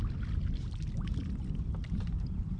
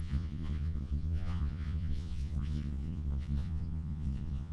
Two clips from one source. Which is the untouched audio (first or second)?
first